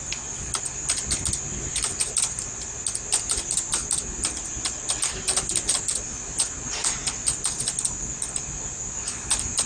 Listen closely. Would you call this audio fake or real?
real